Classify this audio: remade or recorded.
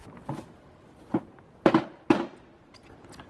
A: recorded